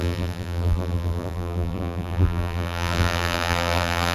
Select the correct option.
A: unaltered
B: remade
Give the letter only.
B